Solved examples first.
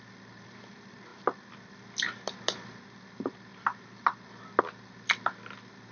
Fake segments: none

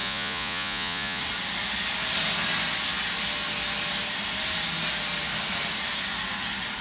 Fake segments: 0.0-1.2 (vocoder, Vocos)

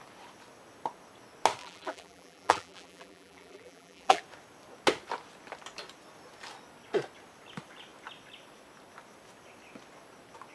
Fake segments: 1.6-4.2 (vocoder, BigVGAN v2)

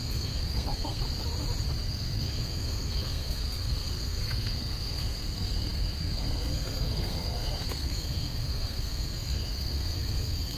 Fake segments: 0.0-1.0 (codec, SNAC); 1.8-10.6

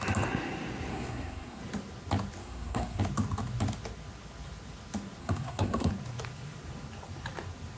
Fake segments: 0.9-1.6 (codec, SNAC); 2.4-3.0; 5.2-5.9

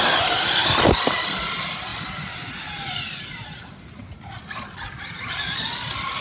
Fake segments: none

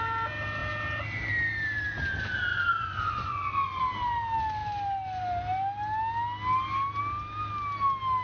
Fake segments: 2.5-3.8 (vocoder, Vocos)

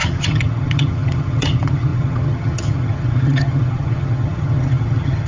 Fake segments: 0.0-5.3 (vocoder, HiFi-GAN)